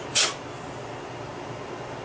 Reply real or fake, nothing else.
real